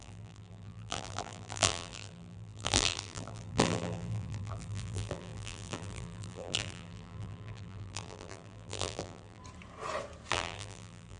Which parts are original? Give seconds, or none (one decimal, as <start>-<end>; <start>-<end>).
9.4-10.3